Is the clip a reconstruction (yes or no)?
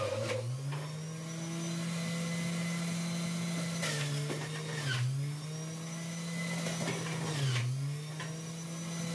no